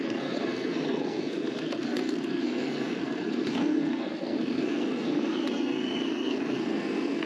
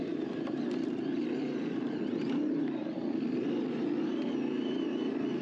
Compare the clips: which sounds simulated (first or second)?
first